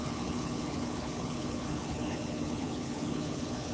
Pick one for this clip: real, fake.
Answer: fake